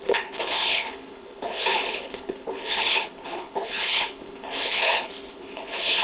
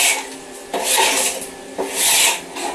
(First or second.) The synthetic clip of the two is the first